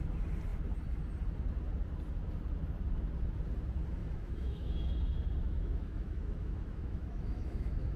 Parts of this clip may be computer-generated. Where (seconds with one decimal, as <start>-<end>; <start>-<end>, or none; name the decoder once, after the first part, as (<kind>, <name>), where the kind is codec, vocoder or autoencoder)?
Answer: 4.0-4.9 (autoencoder, DAC-VAE); 5.4-8.0